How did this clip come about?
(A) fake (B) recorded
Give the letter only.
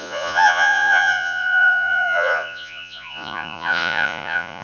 A